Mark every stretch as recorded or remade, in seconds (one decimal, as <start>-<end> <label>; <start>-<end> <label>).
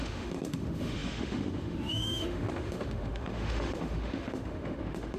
0.0-5.2 remade